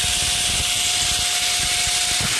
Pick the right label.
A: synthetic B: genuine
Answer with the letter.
B